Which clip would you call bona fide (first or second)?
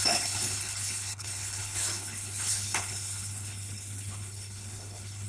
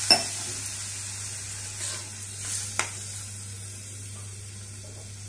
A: second